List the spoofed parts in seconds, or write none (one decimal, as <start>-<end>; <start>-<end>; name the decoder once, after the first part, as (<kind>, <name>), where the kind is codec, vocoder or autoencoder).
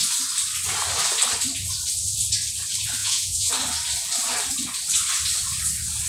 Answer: 3.0-3.5 (vocoder, Vocos)